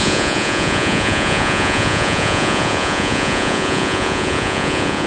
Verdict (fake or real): fake